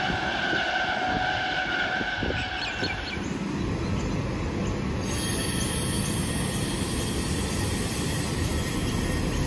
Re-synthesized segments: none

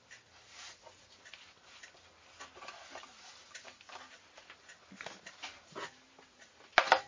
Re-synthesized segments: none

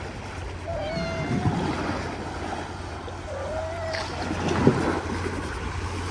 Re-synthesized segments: none

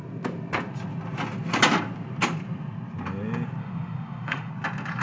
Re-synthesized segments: 3.6-4.5

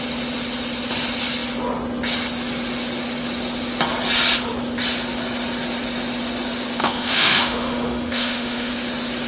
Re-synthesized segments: 6.8-8.7

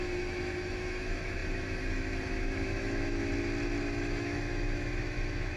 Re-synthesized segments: 0.0-3.2; 3.8-5.6